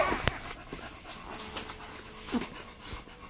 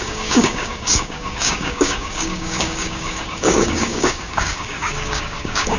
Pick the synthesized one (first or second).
second